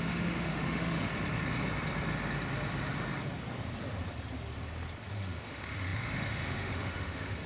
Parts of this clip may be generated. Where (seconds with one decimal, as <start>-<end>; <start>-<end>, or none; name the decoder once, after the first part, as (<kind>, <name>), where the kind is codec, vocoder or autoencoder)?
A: 0.0-1.1 (autoencoder, DAC-VAE); 5.1-7.5